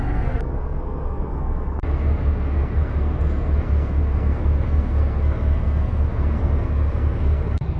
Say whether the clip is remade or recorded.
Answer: remade